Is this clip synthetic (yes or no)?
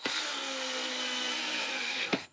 yes